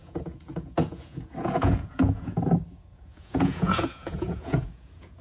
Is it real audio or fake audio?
fake